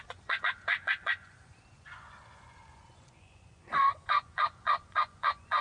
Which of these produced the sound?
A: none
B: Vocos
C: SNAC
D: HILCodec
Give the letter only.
B